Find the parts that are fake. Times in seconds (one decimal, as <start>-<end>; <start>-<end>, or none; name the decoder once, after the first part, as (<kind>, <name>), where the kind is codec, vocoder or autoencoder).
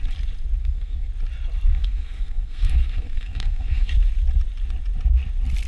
0.6-1.1 (codec, SNAC); 1.7-3.9